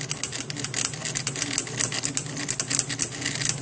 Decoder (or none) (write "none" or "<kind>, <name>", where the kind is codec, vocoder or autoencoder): none